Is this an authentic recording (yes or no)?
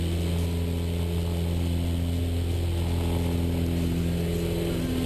yes